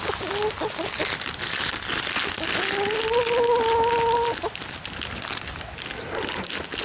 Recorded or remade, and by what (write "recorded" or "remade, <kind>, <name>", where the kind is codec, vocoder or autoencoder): recorded